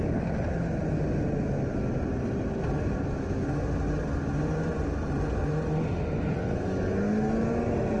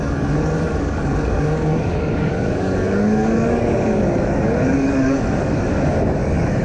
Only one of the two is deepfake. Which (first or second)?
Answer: second